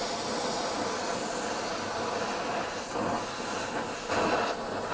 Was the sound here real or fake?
real